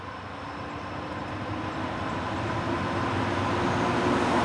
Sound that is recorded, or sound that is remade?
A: recorded